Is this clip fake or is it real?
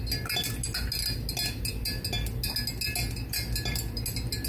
real